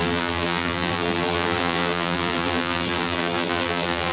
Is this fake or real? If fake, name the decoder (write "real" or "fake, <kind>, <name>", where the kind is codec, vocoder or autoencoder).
fake, vocoder, BigVGAN v2